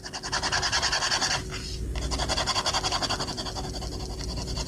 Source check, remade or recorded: recorded